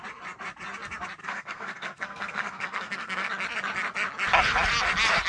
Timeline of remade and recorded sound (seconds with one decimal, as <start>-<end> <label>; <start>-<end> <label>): 0.0-1.2 recorded; 1.2-3.3 remade; 3.3-5.3 recorded